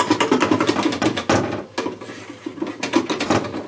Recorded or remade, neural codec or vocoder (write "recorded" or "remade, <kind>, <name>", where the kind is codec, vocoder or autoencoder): recorded